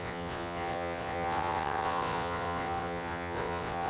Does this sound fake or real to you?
fake